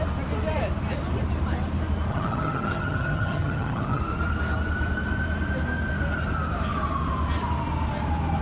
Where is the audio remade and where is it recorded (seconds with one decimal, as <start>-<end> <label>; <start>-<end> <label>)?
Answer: 0.0-2.1 recorded; 2.1-4.0 remade; 4.0-8.4 recorded